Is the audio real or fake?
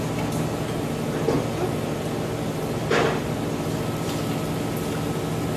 real